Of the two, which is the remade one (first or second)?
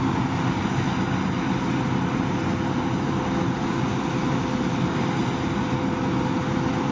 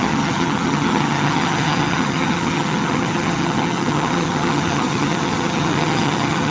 second